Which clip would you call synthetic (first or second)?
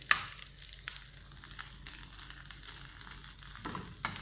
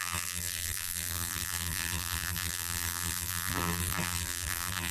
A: second